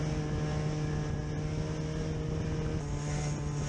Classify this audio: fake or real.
real